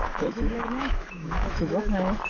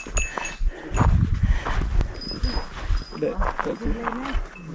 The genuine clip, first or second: second